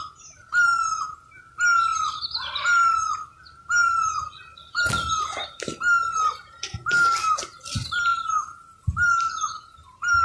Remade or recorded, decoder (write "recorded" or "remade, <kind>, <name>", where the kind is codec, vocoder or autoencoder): recorded